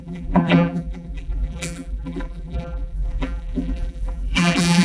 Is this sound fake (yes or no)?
yes